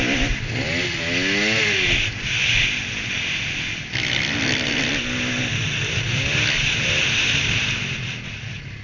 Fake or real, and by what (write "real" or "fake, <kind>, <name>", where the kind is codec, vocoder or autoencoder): real